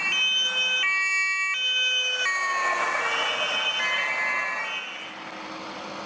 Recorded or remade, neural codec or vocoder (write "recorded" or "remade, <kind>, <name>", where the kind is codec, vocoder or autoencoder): recorded